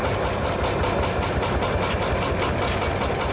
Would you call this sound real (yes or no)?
yes